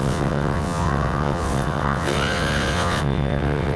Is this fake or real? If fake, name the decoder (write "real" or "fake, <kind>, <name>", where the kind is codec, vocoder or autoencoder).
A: fake, vocoder, WaveNeXt